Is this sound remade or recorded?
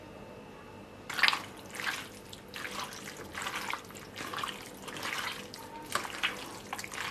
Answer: recorded